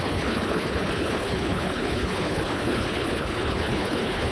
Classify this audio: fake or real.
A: fake